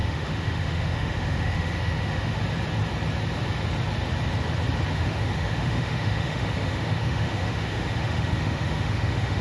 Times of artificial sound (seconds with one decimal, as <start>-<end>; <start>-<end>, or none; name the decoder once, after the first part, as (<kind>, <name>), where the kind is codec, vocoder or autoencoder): 0.0-2.4 (autoencoder, DAC-VAE); 4.9-9.4